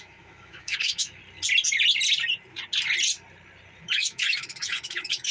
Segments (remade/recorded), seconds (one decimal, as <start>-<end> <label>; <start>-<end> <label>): 0.0-1.2 remade; 1.2-3.8 recorded; 3.8-5.3 remade